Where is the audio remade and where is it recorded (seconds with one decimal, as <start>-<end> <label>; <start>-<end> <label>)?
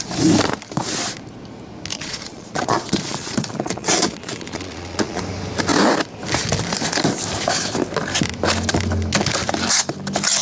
0.0-1.9 recorded; 1.9-5.2 remade; 5.2-10.4 recorded